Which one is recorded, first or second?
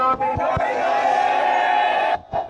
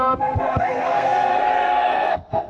first